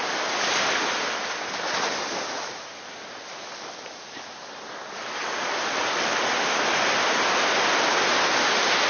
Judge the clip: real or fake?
real